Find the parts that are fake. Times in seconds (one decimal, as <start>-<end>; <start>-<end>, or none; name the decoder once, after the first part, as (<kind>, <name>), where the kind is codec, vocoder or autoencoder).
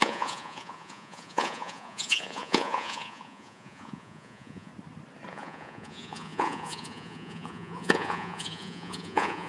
0.0-4.7 (vocoder, Vocos); 5.3-9.5